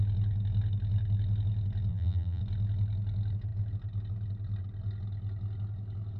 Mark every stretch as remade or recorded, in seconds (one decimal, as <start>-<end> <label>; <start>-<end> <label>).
0.0-1.9 recorded; 1.9-2.4 remade; 2.4-6.2 recorded